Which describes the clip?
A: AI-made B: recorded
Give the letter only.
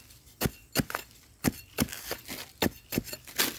B